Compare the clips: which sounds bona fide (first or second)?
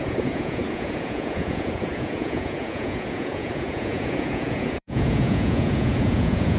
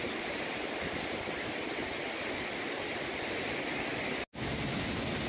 second